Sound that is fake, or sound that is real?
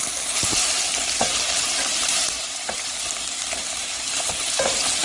fake